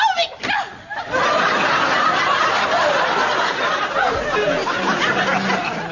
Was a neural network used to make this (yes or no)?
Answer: no